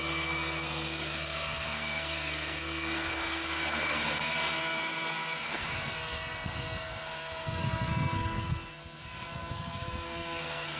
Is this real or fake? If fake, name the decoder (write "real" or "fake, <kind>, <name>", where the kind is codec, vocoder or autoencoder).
fake, codec, SNAC